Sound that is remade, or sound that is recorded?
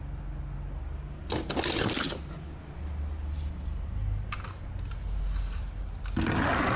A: recorded